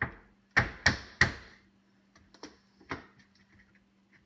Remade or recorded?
recorded